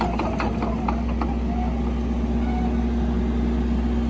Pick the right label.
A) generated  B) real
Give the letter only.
B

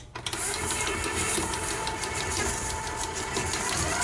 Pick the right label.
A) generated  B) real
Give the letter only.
B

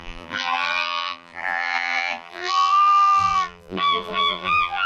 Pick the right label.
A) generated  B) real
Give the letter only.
A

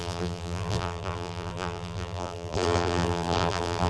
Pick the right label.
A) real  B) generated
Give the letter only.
B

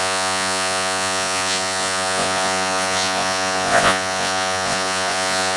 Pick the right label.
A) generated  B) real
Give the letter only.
A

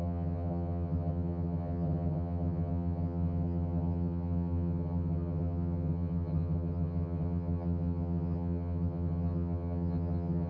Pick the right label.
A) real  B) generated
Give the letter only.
B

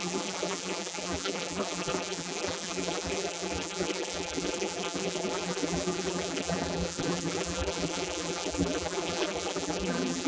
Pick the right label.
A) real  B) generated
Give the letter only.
B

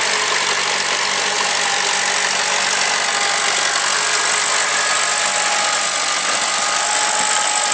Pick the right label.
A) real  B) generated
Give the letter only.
A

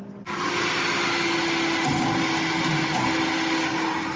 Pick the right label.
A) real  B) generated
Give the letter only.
A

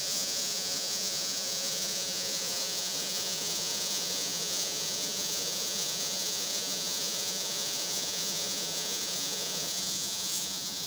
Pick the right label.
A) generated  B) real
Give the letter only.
A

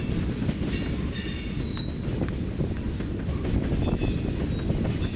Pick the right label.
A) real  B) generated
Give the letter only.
A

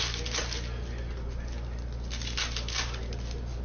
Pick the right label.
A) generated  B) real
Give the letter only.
B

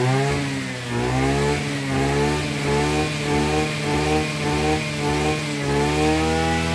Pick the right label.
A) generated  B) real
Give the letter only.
B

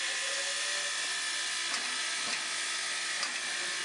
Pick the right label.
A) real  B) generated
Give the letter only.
A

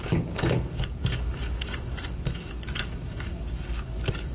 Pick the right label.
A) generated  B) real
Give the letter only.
A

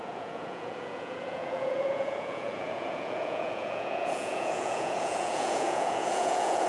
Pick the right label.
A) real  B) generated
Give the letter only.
B